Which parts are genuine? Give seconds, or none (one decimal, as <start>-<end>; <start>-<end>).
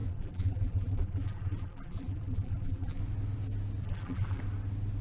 3.0-3.8; 4.4-5.0